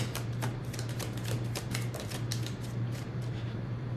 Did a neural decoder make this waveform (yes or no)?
yes